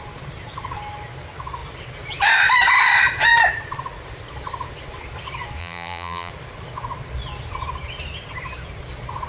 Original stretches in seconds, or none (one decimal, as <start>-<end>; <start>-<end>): 0.0-5.6; 6.3-9.3